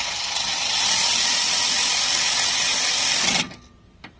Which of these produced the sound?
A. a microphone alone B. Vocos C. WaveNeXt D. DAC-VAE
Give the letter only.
A